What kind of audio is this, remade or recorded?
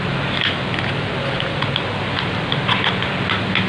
recorded